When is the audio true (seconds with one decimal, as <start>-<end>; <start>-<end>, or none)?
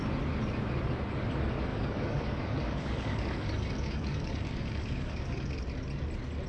0.0-1.7; 5.6-6.5